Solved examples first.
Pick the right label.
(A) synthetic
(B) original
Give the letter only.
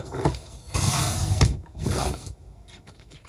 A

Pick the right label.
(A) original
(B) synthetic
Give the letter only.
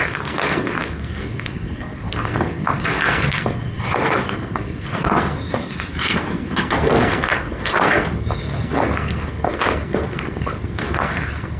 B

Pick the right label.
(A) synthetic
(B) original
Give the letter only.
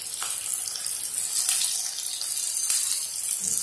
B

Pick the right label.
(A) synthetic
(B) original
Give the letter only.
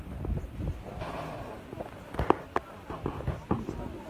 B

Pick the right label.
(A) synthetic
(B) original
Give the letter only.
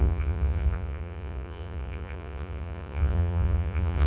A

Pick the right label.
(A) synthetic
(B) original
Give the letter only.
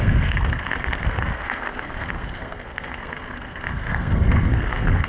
A